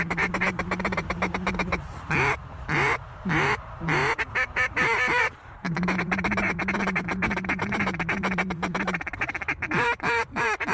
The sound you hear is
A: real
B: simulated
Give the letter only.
B